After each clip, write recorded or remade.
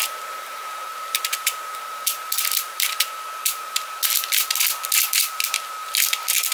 recorded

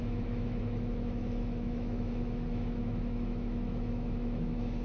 remade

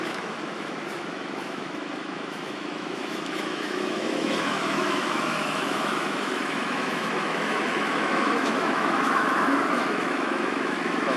remade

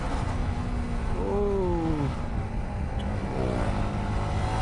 recorded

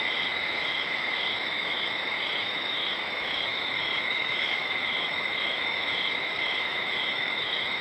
remade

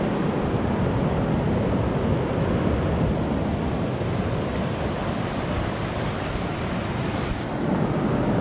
recorded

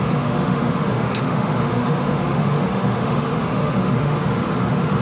remade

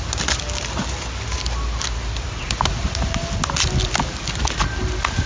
recorded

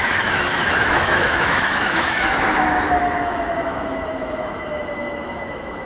remade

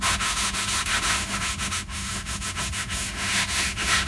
remade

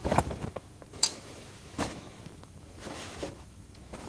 remade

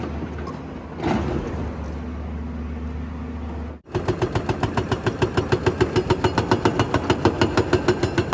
recorded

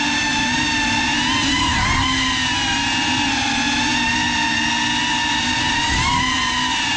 recorded